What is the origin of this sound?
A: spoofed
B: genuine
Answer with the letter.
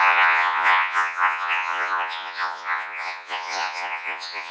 A